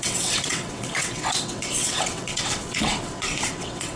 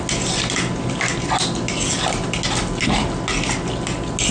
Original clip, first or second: second